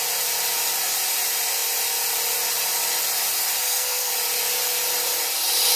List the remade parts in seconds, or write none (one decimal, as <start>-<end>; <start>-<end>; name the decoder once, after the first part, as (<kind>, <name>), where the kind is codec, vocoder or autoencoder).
3.6-4.1 (codec, SNAC)